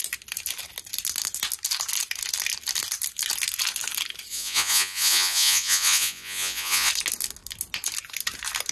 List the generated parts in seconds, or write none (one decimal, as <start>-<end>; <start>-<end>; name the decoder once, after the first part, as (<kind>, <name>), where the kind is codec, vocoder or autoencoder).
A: 4.3-6.9 (vocoder, Vocos)